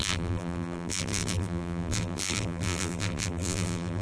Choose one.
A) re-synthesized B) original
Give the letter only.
A